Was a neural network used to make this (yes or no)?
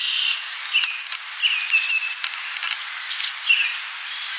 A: no